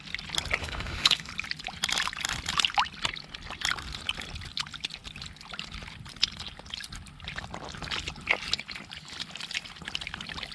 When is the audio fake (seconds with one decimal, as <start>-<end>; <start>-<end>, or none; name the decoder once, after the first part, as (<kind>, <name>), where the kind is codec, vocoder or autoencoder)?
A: 0.6-1.3 (autoencoder, DAC-VAE)